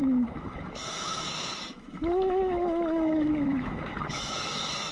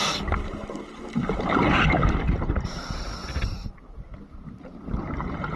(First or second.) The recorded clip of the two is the second